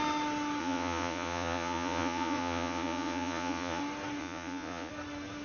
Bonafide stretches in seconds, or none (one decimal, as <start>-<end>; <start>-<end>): 0.0-0.6; 3.8-4.2; 4.9-5.4

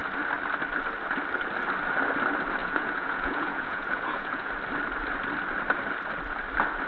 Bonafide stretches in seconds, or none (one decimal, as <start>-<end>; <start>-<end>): 0.0-2.6; 4.5-6.9

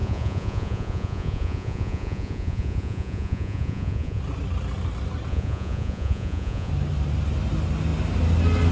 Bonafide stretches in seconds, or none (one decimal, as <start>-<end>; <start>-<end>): 4.2-5.3; 6.7-8.7